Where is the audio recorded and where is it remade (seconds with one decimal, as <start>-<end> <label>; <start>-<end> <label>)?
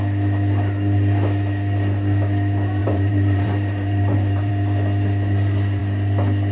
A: 0.0-2.8 recorded; 2.8-4.5 remade; 4.5-6.5 recorded